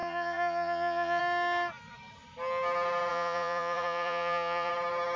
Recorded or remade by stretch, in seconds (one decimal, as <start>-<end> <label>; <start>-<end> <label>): 0.0-1.2 remade; 1.2-3.1 recorded; 3.1-4.7 remade; 4.7-5.2 recorded